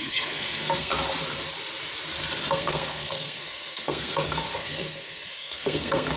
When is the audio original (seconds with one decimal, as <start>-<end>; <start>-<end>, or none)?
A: 0.9-2.5